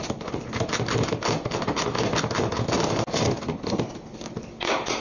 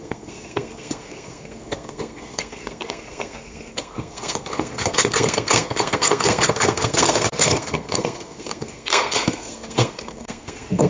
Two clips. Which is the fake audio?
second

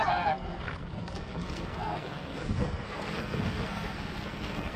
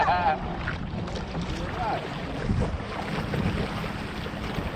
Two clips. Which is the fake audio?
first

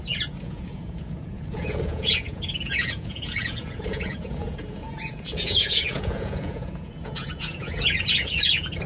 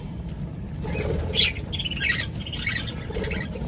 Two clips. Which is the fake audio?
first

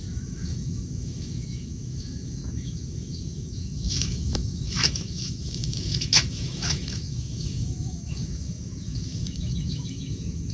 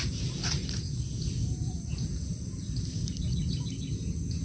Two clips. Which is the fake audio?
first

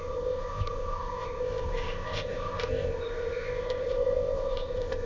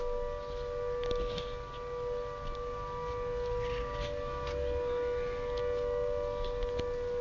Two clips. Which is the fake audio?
first